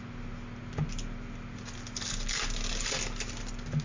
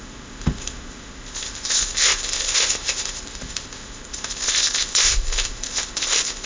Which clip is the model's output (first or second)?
second